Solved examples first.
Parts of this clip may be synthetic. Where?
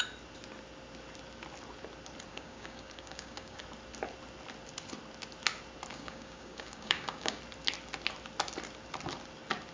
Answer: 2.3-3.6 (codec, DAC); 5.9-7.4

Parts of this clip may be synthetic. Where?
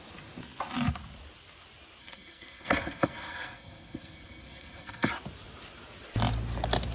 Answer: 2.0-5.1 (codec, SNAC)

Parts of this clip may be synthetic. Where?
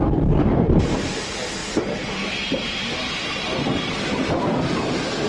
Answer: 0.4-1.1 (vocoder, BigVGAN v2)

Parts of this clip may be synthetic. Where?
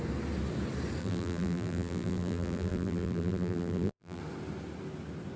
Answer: 1.0-4.2 (vocoder, BigVGAN v2)